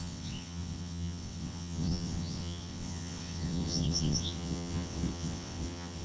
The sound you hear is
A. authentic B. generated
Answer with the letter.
B